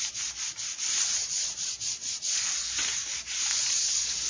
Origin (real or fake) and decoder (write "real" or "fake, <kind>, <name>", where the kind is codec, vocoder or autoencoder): real